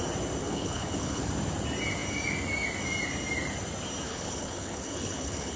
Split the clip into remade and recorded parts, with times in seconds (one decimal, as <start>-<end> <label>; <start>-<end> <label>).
0.0-0.4 recorded; 0.4-1.3 remade; 1.3-4.1 recorded; 4.1-5.6 remade